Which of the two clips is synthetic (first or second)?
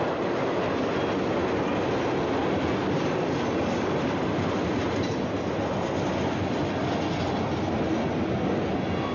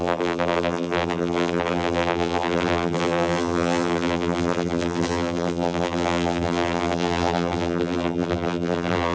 second